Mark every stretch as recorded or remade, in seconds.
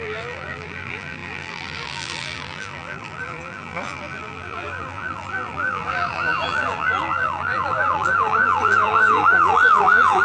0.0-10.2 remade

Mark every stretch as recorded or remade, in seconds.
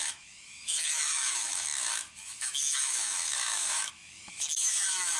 0.0-5.2 remade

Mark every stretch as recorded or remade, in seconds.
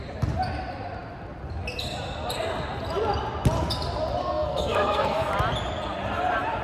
0.0-4.2 recorded; 4.2-5.3 remade; 5.3-6.6 recorded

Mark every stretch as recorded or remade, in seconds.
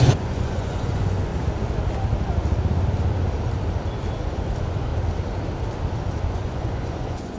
0.0-1.3 remade; 1.3-4.2 recorded; 4.2-4.9 remade; 4.9-6.2 recorded; 6.2-7.4 remade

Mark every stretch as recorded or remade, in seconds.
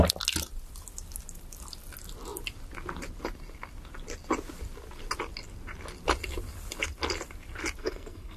0.0-7.8 recorded; 7.8-8.4 remade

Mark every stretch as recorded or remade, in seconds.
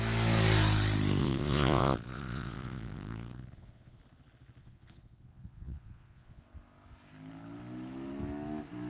0.0-1.2 recorded; 1.2-4.0 remade; 4.0-4.6 recorded; 4.6-6.4 remade; 6.4-8.9 recorded